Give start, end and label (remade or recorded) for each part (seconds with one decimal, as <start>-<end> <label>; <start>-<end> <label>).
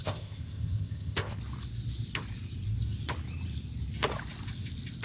0.0-1.4 remade; 1.4-5.0 recorded